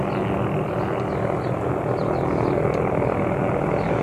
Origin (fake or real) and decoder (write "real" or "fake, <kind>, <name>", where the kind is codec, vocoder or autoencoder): real